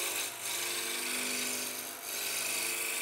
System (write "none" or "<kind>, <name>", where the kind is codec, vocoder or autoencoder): none